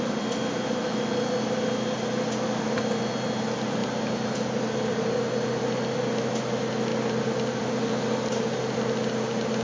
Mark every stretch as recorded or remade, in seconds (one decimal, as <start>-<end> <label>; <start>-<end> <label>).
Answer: 0.0-9.6 recorded